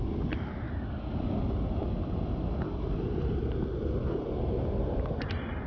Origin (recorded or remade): recorded